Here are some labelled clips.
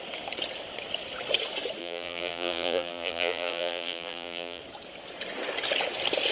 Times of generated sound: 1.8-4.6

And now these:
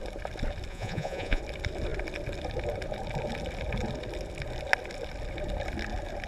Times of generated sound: 0.7-1.4

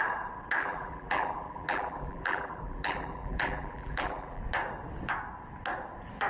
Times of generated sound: 0.6-4.4

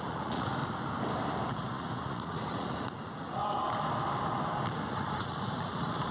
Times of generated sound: 0.0-0.6; 1.5-3.4; 4.9-6.1